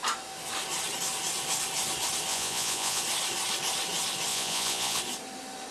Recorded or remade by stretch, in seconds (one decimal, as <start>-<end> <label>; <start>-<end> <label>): 0.0-2.3 recorded; 2.3-3.0 remade; 3.0-4.3 recorded; 4.3-5.0 remade; 5.0-5.7 recorded